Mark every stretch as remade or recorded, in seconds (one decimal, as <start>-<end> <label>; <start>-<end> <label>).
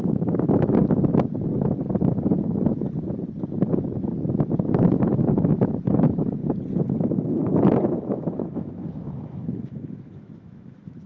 0.0-0.8 remade; 0.8-4.9 recorded; 4.9-6.4 remade; 6.4-7.0 recorded; 7.0-7.4 remade; 7.4-7.9 recorded; 7.9-11.1 remade